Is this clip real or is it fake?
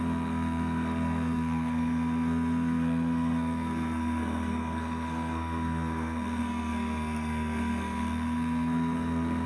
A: fake